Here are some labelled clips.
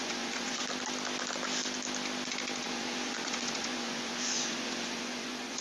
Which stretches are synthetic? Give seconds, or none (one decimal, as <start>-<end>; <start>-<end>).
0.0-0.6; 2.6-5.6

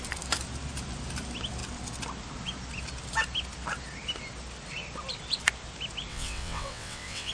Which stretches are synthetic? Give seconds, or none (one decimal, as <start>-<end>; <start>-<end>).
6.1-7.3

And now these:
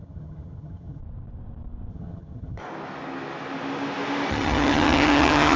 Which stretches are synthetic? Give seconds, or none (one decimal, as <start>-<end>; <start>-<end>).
0.0-1.0; 1.9-2.6; 4.3-5.6